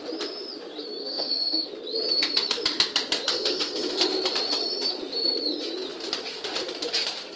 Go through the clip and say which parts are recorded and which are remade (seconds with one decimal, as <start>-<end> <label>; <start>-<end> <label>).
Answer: 0.0-1.0 recorded; 1.0-1.7 remade; 1.7-3.3 recorded; 3.3-4.1 remade; 4.1-7.4 recorded